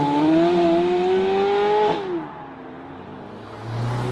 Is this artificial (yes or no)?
no